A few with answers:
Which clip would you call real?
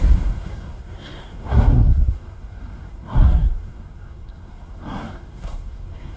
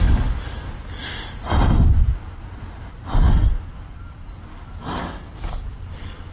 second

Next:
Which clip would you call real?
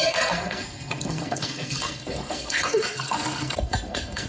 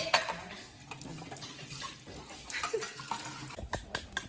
second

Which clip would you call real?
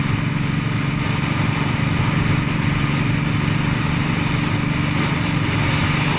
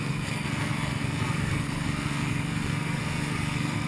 first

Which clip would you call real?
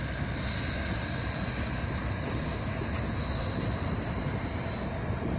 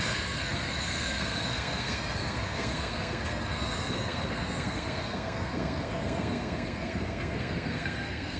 first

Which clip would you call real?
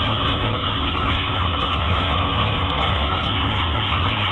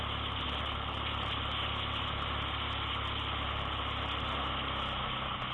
second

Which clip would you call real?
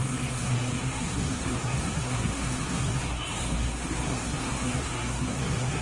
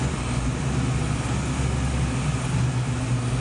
second